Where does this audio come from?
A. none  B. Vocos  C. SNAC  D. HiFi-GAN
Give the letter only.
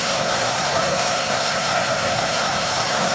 C